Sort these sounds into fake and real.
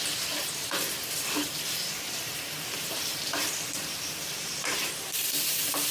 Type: fake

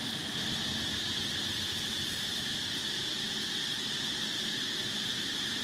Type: real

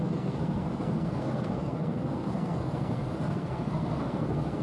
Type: fake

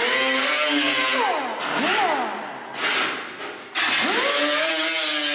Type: real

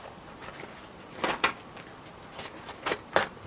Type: real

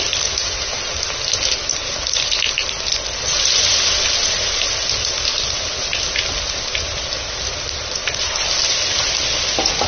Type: real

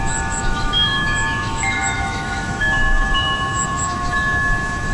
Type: fake